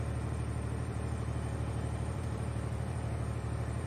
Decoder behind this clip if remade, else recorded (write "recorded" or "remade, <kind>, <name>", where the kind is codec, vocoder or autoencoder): remade, vocoder, BigVGAN v2